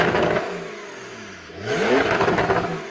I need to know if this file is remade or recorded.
remade